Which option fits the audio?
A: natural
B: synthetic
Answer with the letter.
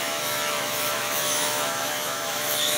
B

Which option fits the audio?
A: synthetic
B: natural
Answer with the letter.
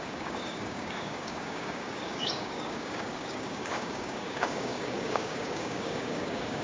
A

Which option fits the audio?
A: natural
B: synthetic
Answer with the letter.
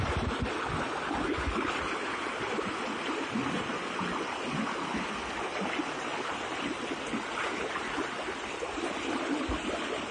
A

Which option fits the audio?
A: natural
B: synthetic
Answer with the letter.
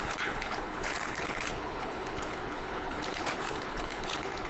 B